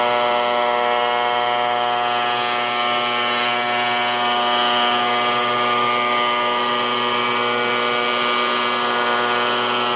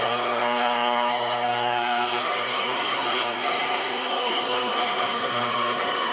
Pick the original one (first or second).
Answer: first